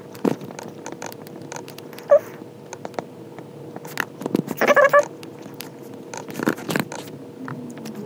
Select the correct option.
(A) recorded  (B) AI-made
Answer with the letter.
A